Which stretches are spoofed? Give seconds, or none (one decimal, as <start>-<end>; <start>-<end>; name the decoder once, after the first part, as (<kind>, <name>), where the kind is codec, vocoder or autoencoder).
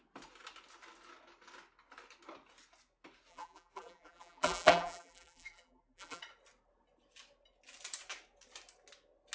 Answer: 3.3-6.2 (vocoder, BigVGAN v2)